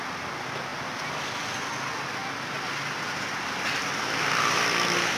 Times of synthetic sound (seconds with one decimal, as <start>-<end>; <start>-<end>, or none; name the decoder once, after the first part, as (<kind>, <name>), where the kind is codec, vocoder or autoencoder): 0.7-1.7 (vocoder, BigVGAN v2); 2.2-2.8